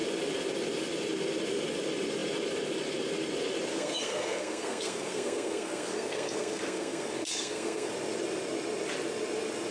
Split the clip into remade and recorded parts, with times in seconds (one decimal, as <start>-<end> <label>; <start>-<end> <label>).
0.0-3.7 recorded; 3.7-7.9 remade; 7.9-9.7 recorded